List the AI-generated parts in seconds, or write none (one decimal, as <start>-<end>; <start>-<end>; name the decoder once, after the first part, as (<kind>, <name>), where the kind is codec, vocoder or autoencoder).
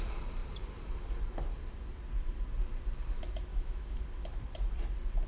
3.5-4.0 (autoencoder, DAC-VAE)